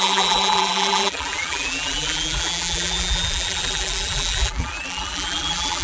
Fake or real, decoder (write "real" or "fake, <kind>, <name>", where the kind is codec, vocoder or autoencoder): fake, vocoder, BigVGAN v2